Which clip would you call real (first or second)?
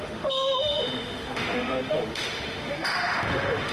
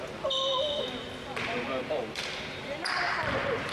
second